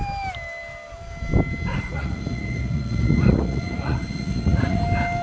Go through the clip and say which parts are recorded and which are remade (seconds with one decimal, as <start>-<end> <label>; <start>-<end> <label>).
0.0-1.7 recorded; 1.7-4.8 remade; 4.8-5.2 recorded